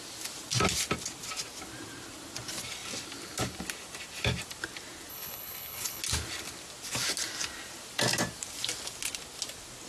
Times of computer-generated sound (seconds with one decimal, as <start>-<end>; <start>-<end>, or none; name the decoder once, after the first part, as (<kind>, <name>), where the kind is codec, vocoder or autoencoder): 5.1-6.0 (codec, HILCodec)